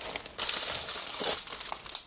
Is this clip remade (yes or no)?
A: no